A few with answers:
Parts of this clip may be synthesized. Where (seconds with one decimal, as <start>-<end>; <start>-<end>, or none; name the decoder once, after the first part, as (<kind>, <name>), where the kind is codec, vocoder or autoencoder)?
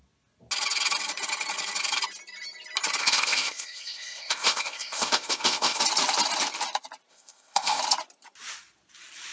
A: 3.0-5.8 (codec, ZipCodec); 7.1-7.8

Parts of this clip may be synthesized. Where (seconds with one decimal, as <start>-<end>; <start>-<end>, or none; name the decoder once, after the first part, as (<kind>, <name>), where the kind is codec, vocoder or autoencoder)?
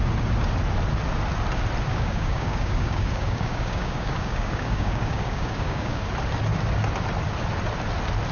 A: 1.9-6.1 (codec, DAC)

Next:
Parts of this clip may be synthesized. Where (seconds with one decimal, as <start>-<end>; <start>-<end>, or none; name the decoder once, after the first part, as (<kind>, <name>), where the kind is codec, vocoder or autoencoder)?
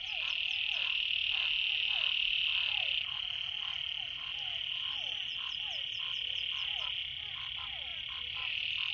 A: none